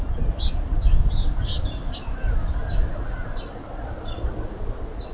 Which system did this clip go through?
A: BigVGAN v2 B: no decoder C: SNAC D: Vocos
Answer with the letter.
B